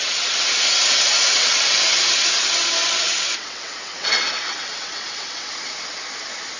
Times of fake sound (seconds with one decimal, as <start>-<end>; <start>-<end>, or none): 0.0-5.7